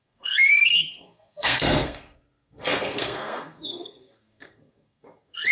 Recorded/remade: remade